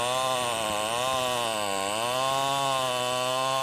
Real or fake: real